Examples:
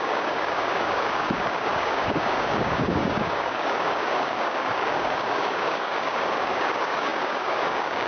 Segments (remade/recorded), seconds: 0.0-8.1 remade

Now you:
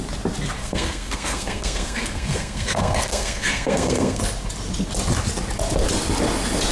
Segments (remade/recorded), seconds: 0.0-0.6 recorded; 0.6-4.2 remade; 4.2-6.7 recorded